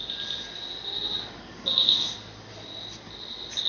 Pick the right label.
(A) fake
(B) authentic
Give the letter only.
B